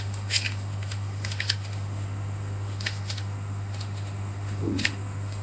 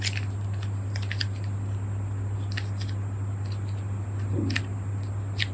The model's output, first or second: first